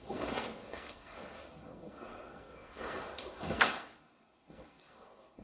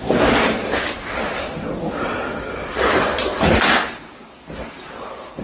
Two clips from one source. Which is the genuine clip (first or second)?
second